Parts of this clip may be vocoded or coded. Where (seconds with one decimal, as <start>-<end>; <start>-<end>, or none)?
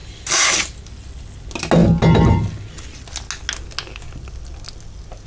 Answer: none